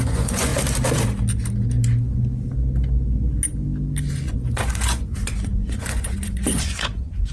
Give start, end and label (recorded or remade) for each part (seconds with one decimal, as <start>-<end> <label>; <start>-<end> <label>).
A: 0.0-0.5 remade; 0.5-4.1 recorded; 4.1-7.3 remade